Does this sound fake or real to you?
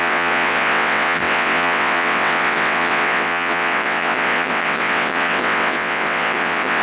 fake